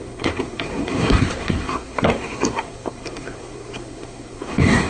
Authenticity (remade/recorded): remade